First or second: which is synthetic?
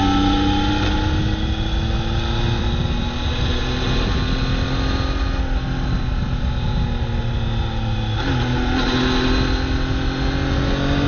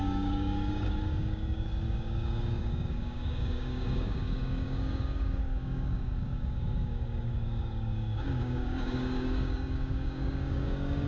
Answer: second